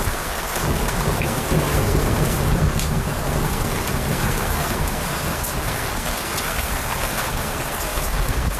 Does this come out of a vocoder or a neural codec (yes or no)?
yes